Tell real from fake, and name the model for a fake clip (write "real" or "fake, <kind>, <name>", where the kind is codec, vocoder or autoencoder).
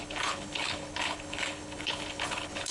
fake, codec, HILCodec